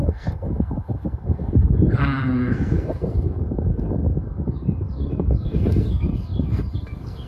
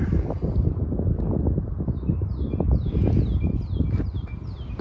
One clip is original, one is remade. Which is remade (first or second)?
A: first